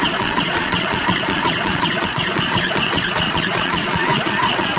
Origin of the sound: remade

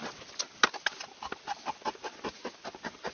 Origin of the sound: recorded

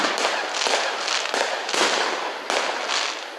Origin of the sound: recorded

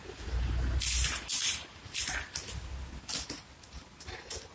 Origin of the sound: recorded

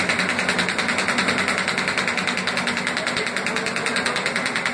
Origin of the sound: recorded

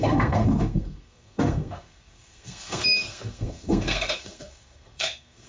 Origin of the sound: remade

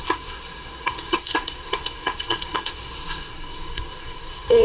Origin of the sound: remade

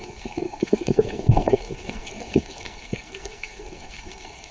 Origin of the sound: remade